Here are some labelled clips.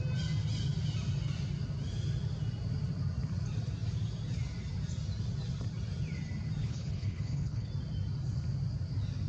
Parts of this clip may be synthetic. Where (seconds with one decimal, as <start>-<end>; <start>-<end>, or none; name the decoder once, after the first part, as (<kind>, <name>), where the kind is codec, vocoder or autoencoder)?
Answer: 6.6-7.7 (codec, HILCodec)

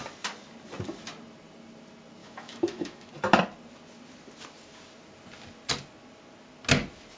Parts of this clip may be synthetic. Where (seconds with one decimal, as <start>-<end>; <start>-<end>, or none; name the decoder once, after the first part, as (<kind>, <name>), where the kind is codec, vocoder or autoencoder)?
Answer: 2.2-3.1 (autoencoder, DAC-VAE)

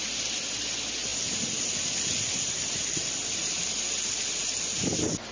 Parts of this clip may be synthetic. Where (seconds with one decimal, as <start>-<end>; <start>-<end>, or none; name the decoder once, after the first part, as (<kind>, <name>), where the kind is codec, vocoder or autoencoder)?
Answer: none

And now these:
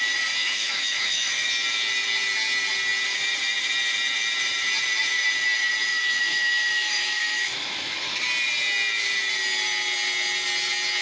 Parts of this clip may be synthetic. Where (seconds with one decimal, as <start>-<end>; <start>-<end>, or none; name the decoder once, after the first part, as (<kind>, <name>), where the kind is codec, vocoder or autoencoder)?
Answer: 0.4-1.5 (autoencoder, DAC-VAE); 5.9-8.2

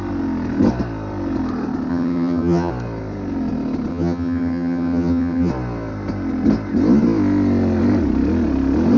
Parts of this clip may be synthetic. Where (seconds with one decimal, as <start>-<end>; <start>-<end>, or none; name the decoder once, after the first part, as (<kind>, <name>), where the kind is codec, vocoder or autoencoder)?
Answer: 1.9-2.7 (vocoder, HiFi-GAN); 3.9-5.5

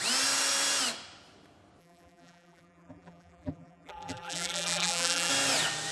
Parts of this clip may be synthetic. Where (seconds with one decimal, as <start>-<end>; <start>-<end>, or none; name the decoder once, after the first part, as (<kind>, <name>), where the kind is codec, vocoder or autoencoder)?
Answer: 1.8-5.3 (vocoder, BigVGAN v2)

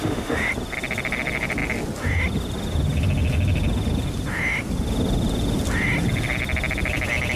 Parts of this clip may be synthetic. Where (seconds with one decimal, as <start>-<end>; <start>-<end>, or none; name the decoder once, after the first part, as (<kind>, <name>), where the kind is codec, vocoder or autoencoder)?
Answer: 0.0-0.5 (autoencoder, DAC-VAE)